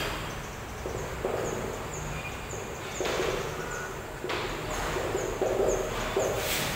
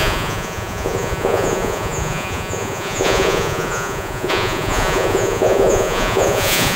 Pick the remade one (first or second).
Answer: second